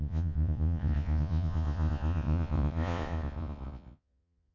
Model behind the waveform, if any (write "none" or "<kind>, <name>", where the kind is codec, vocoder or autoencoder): vocoder, Vocos